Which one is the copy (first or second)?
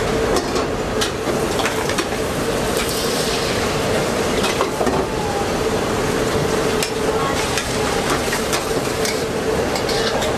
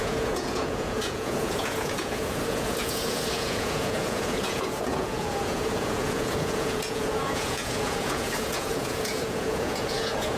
second